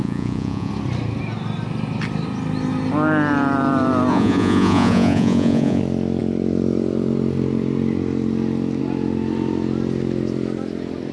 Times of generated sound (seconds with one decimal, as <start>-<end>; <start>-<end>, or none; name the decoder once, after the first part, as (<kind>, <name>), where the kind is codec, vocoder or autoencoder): 0.0-0.7 (vocoder, Vocos); 4.1-5.8